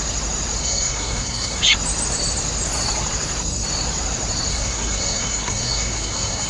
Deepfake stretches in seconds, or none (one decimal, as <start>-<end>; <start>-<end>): 0.6-1.6; 4.5-6.5